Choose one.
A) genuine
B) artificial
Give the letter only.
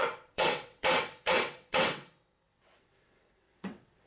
B